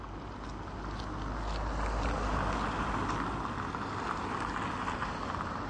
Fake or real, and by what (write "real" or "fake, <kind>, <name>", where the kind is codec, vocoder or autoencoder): real